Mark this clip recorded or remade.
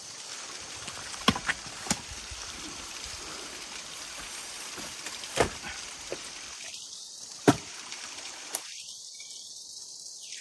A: remade